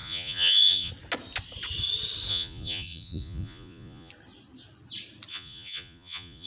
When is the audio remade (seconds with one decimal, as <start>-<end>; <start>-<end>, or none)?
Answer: 0.0-0.9; 2.3-4.1; 5.3-6.5